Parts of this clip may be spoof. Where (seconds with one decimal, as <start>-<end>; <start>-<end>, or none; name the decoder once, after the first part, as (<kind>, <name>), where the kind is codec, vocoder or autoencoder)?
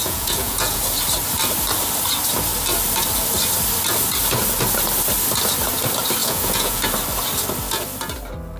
0.0-0.8 (vocoder, Vocos); 6.2-6.8